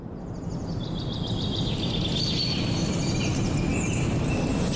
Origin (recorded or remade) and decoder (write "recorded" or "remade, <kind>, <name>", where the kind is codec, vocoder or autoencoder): recorded